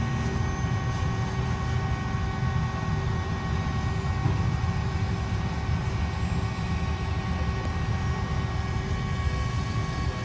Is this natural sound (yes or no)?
yes